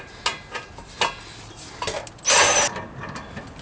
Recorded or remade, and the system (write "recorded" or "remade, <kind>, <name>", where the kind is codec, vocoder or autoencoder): recorded